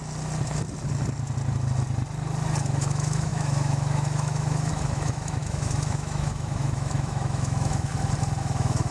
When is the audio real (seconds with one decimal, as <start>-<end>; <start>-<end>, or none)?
0.0-2.6; 7.9-8.4